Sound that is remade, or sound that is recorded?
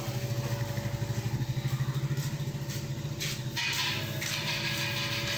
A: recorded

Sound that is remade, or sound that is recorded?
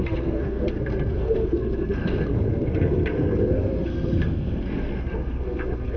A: remade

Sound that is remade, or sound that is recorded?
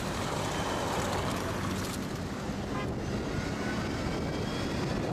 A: recorded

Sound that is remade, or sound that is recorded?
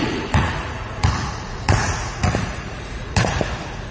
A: remade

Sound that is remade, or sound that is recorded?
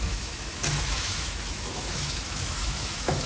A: remade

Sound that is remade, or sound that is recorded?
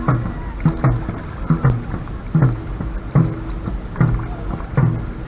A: recorded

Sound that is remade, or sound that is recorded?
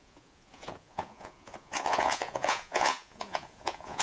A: remade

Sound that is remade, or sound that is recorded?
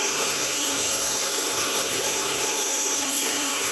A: remade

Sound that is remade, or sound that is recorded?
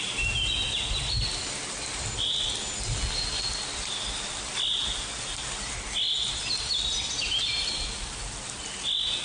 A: recorded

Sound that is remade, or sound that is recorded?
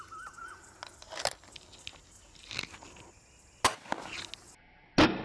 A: recorded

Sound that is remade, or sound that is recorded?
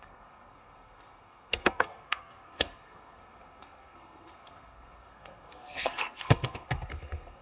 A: remade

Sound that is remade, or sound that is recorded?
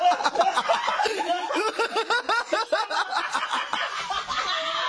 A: recorded